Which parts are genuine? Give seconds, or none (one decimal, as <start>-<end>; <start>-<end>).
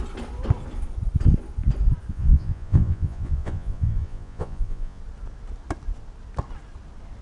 0.0-2.1; 5.0-7.2